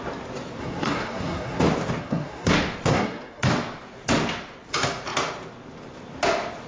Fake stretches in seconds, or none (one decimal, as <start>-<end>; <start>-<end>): 0.6-1.6; 2.0-2.5; 2.9-3.5